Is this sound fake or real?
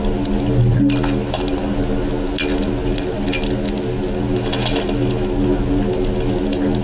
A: real